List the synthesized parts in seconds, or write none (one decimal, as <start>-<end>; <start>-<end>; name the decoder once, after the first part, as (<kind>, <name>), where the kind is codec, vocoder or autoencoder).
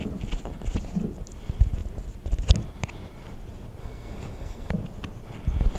3.8-4.7 (codec, SNAC)